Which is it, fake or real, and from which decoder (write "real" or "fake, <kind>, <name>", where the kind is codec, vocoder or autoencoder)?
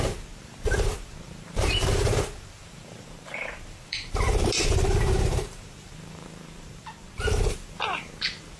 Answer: fake, vocoder, BigVGAN v2